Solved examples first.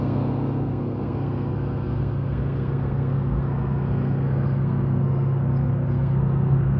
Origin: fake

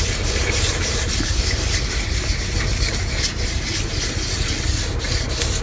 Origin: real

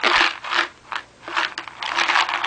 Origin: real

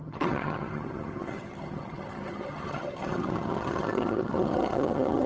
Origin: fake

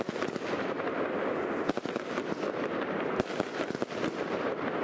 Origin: real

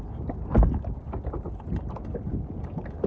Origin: real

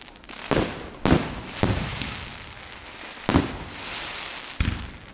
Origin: real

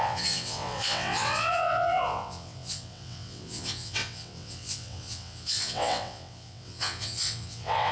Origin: fake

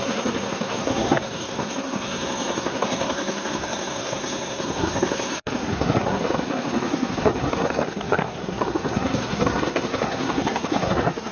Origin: fake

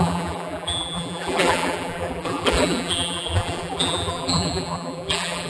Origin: fake